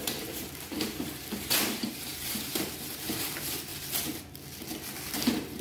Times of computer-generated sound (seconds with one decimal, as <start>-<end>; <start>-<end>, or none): 0.0-3.7; 5.1-5.6